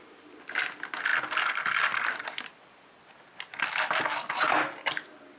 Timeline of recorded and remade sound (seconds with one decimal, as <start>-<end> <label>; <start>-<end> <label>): 0.0-5.4 recorded